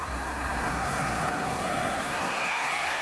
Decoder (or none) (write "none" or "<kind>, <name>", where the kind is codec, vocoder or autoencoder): codec, SNAC